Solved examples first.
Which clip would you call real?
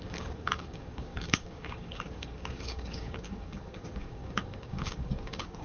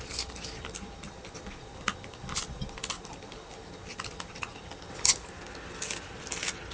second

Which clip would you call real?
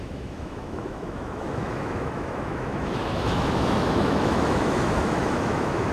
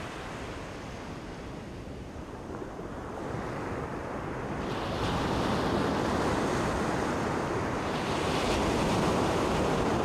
second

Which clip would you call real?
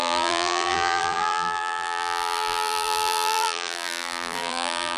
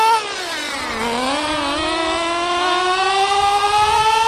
second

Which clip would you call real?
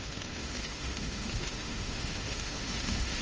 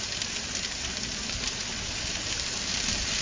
second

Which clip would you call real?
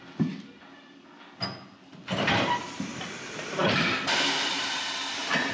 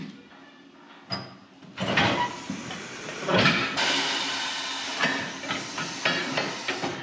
second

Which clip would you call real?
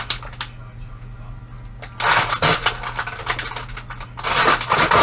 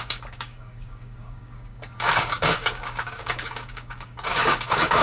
first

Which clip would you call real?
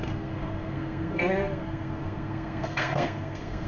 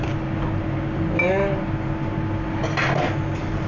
second